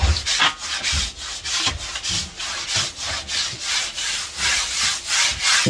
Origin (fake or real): real